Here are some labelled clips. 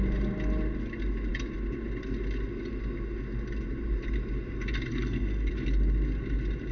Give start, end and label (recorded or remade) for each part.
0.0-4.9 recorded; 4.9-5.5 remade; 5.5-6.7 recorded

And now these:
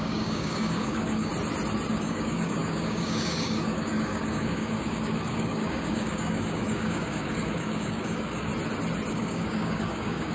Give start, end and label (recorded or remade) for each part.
0.0-1.3 remade; 1.3-1.9 recorded; 1.9-8.5 remade; 8.5-9.1 recorded; 9.1-10.3 remade

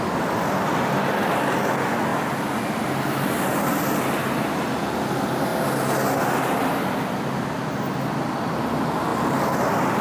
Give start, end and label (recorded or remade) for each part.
0.0-10.0 recorded